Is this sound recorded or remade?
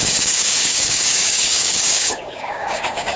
remade